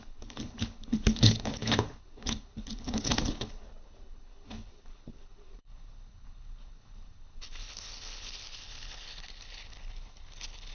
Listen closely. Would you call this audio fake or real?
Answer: fake